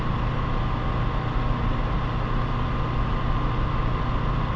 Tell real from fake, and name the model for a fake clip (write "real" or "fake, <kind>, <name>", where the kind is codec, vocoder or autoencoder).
real